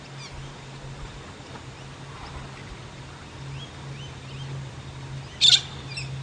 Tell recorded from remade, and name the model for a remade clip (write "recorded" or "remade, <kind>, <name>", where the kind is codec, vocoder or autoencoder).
recorded